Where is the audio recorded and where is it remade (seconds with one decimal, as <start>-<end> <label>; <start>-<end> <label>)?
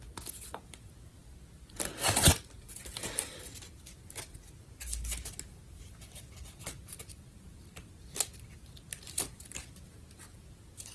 0.0-10.9 recorded